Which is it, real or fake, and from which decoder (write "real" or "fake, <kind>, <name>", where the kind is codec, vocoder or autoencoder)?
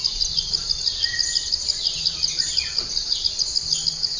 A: real